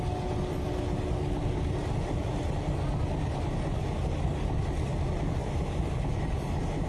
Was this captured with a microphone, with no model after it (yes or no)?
yes